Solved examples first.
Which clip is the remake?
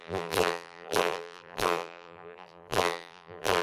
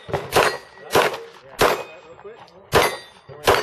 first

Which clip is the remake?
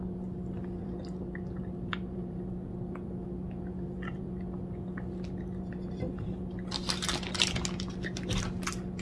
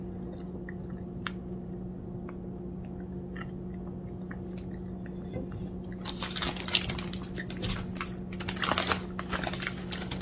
first